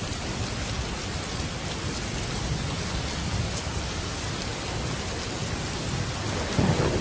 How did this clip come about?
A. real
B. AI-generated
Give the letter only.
A